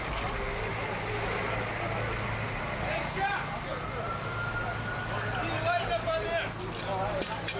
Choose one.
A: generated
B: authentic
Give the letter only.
B